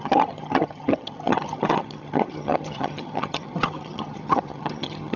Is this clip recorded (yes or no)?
no